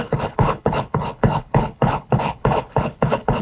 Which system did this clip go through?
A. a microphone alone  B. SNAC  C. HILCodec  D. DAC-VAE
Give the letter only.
C